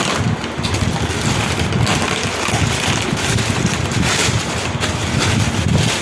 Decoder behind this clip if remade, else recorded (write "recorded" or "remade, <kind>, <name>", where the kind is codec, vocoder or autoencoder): recorded